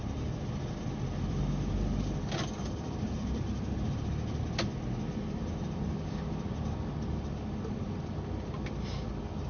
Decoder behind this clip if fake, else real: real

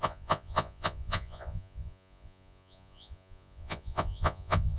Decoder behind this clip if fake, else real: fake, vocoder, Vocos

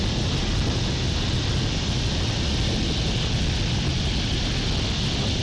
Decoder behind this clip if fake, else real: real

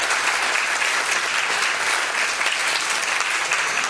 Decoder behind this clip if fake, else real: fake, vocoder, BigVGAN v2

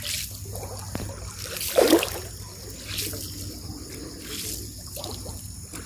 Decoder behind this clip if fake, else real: real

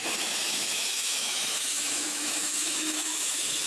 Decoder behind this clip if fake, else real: fake, autoencoder, DAC-VAE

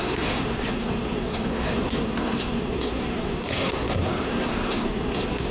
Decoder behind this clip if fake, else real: fake, codec, SNAC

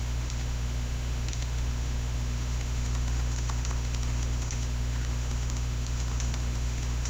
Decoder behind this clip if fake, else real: fake, autoencoder, DAC-VAE